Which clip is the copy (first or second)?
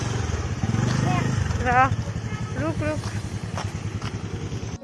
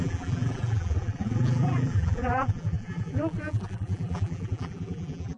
second